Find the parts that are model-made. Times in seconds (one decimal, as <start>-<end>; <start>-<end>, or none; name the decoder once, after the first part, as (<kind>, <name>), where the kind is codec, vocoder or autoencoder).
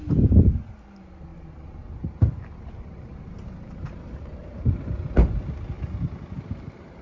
1.3-4.8 (vocoder, BigVGAN v2)